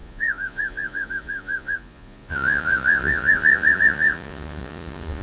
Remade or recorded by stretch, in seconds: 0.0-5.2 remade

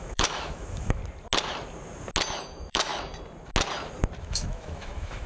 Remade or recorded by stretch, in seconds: 0.0-1.0 remade; 1.0-2.4 recorded; 2.4-2.9 remade; 2.9-4.2 recorded; 4.2-5.3 remade

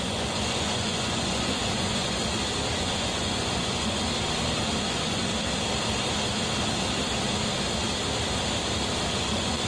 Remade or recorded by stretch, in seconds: 0.0-2.2 remade; 2.2-2.8 recorded; 2.8-4.1 remade; 4.1-4.8 recorded; 4.8-5.3 remade; 5.3-9.1 recorded; 9.1-9.7 remade

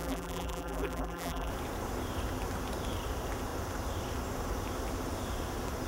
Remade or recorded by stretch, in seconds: 0.0-1.5 remade; 1.5-5.9 recorded

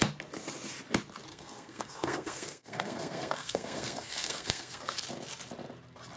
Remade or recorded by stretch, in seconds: 0.0-1.3 recorded; 1.3-5.0 remade; 5.0-6.2 recorded